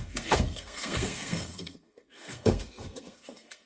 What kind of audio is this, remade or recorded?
remade